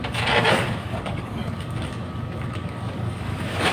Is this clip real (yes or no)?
no